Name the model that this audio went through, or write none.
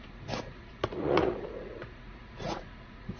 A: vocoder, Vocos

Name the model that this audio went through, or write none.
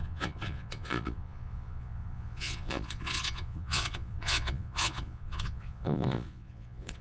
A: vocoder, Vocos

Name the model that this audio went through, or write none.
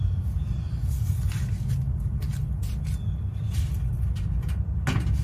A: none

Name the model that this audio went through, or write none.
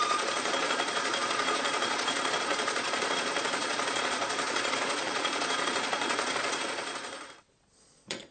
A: vocoder, Vocos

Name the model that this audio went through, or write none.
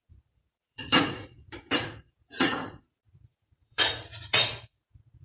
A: vocoder, Vocos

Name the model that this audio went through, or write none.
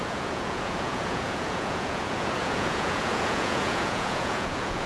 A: vocoder, Vocos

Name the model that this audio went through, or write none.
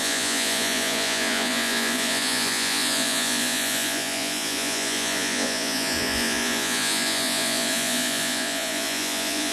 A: vocoder, Vocos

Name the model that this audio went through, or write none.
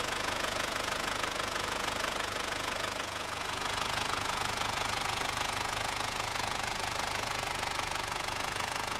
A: vocoder, Vocos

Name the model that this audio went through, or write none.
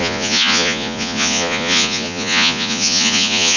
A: vocoder, Vocos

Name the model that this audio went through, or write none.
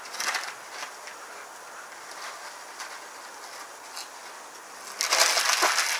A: none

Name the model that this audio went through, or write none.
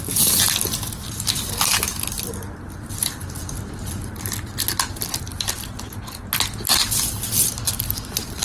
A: none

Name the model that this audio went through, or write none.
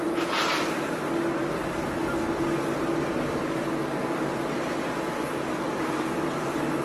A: none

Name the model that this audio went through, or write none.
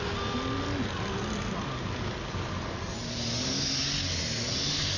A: none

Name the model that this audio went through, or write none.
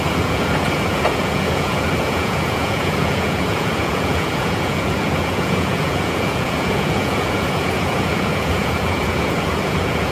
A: vocoder, Vocos